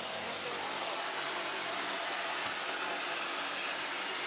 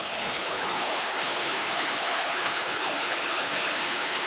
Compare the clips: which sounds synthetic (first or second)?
second